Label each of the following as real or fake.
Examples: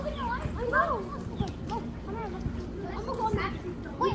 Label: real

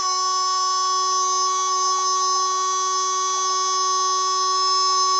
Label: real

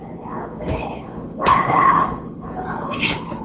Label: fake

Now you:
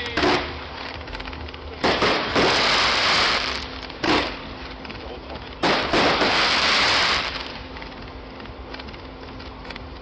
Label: real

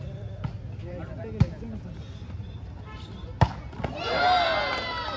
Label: real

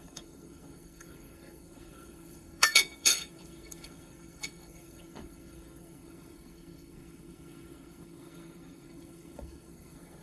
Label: fake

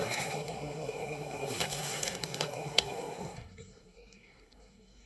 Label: fake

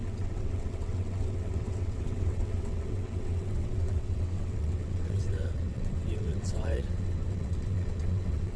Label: fake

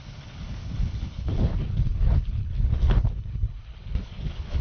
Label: fake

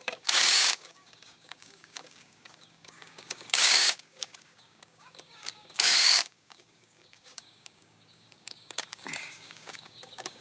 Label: fake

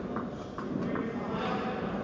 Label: real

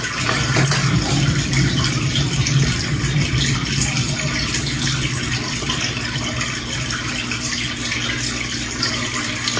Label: real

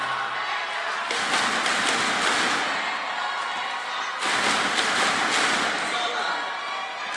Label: real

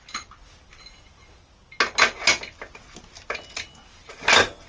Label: real